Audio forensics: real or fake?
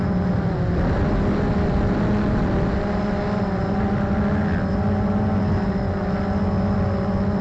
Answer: real